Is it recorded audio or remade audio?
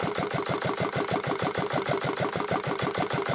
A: recorded